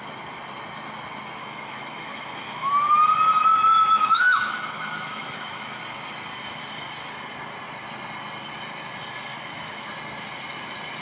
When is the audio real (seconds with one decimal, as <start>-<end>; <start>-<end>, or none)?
0.0-1.4; 2.8-3.4; 5.8-9.3; 9.9-11.0